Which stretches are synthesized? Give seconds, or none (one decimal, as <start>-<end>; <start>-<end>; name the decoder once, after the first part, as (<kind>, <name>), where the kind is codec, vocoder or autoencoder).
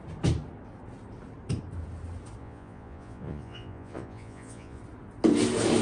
2.4-4.8 (vocoder, Vocos)